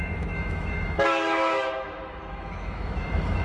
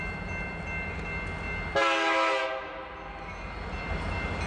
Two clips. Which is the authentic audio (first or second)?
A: second